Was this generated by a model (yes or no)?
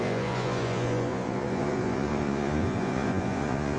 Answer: yes